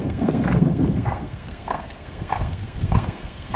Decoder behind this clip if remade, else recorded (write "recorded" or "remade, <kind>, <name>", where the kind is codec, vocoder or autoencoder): remade, codec, SNAC